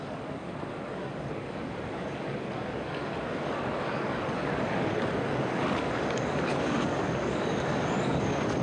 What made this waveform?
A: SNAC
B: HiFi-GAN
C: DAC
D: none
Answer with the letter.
C